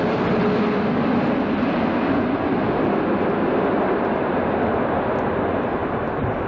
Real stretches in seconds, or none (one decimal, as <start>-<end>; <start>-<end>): 0.0-6.5